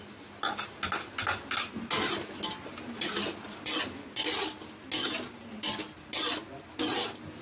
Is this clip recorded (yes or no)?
yes